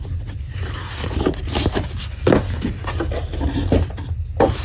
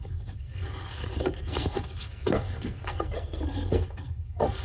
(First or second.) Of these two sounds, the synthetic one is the second